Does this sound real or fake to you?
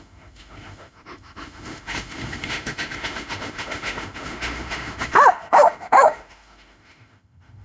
fake